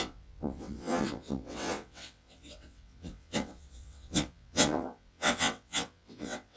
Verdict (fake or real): fake